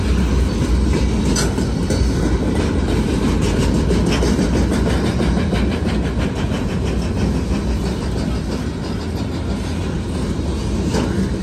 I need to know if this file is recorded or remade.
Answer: recorded